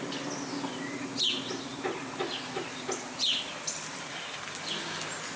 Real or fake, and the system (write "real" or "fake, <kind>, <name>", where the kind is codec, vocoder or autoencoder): real